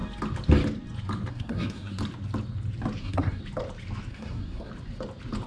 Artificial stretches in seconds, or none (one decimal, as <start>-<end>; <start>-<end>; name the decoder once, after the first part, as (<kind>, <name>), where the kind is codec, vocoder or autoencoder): 1.3-2.0 (codec, SNAC); 3.0-3.4; 4.1-4.7